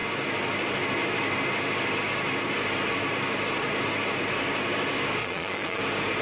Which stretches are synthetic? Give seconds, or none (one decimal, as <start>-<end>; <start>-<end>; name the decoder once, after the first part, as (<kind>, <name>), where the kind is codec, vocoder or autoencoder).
5.2-5.8 (vocoder, Vocos)

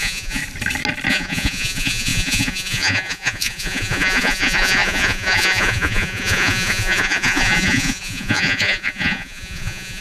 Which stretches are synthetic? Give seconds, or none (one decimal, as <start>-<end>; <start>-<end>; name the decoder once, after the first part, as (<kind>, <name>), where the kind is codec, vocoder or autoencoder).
0.0-0.4 (vocoder, Vocos); 1.1-10.0

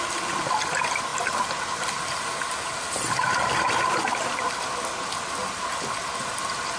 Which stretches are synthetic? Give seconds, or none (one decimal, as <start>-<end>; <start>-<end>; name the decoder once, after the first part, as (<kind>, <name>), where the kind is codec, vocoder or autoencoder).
none

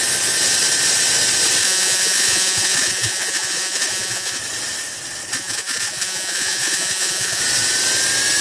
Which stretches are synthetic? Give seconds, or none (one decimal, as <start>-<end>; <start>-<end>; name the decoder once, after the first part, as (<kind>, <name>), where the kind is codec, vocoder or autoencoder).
1.6-4.4 (vocoder, Vocos); 5.3-7.4

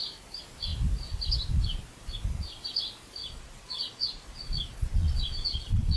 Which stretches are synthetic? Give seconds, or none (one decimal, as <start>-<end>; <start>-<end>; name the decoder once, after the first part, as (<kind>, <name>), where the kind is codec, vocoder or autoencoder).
3.2-6.0 (vocoder, Vocos)